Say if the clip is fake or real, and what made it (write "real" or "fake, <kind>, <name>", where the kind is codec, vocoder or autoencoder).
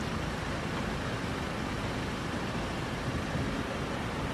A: real